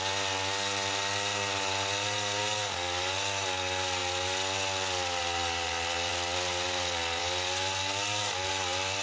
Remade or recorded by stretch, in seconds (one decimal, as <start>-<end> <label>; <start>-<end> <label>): 0.0-9.0 recorded